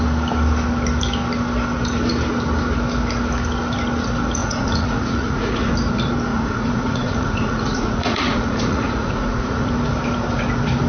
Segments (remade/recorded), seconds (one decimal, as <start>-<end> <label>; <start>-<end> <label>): 0.0-4.4 recorded; 4.4-5.7 remade; 5.7-6.3 recorded; 6.3-9.7 remade; 9.7-10.9 recorded

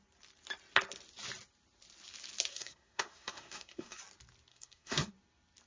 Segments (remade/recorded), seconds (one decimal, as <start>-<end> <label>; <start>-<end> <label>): 0.0-2.5 recorded; 2.5-4.0 remade; 4.0-4.5 recorded; 4.5-5.1 remade; 5.1-5.7 recorded

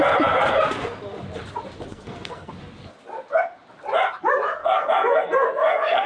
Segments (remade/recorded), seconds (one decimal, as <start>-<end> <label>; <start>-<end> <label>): 0.0-1.9 recorded; 1.9-2.5 remade; 2.5-4.6 recorded; 4.6-6.1 remade

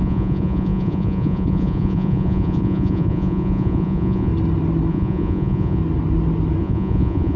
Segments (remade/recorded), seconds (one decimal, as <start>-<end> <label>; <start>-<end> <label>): 0.0-4.3 remade; 4.3-4.9 recorded; 4.9-5.8 remade; 5.8-6.6 recorded; 6.6-7.4 remade

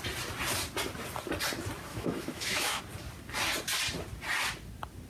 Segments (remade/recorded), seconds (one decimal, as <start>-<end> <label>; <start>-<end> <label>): 0.0-1.9 recorded; 1.9-2.8 remade; 2.8-5.1 recorded